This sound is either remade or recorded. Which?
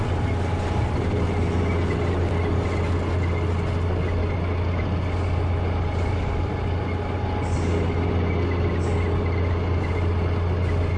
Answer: recorded